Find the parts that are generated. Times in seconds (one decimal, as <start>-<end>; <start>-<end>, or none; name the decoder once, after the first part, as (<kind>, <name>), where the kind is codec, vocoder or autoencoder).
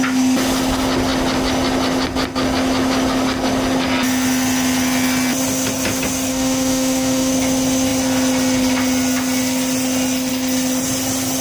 6.3-7.3 (autoencoder, DAC-VAE)